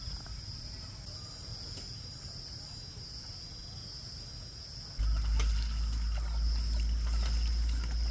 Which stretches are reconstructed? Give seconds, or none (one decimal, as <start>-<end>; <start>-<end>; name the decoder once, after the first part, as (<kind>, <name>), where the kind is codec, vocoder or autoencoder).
1.5-2.6 (vocoder, BigVGAN v2)